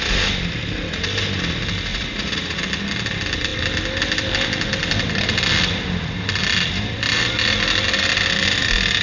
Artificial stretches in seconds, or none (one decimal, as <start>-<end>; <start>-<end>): 1.9-2.6